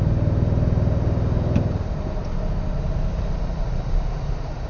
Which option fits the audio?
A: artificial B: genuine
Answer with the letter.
B